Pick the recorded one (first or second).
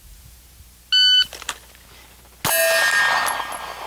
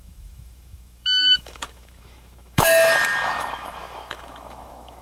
first